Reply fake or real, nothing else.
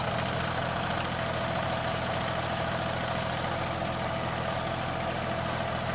real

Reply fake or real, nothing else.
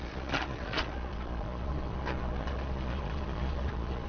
fake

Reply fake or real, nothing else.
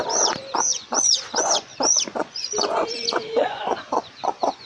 fake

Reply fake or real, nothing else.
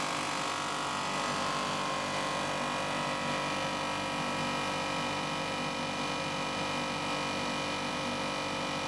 real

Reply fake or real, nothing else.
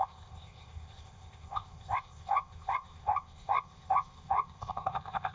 fake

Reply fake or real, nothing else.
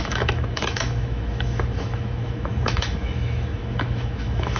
fake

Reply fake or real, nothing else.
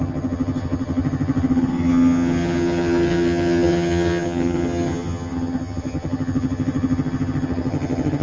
fake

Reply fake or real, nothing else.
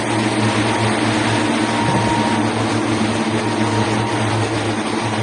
real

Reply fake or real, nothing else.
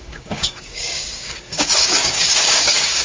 fake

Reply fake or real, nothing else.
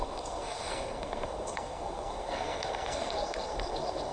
fake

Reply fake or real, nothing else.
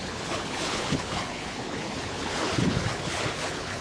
fake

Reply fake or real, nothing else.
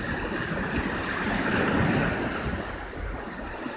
real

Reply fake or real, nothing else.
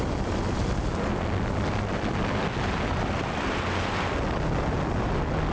real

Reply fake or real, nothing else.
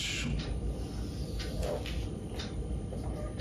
real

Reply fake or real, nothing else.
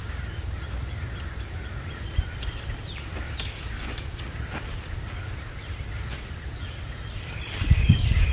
fake